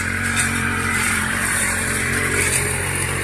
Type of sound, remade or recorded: remade